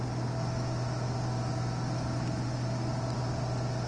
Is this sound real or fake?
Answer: real